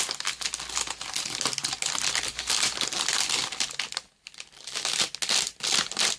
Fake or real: real